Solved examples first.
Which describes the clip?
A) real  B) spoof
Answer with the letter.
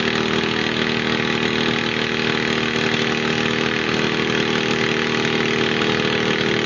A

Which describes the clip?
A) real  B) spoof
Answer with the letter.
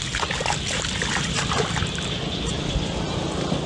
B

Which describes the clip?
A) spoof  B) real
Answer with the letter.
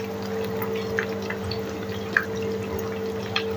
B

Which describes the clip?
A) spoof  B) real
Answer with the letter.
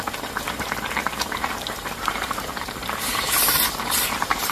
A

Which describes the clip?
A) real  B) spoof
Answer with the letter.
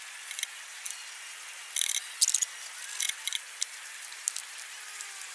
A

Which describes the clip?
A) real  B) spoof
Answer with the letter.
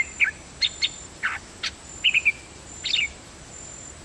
A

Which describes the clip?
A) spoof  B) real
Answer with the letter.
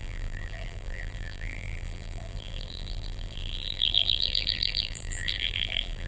A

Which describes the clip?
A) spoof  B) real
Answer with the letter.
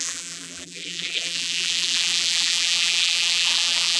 A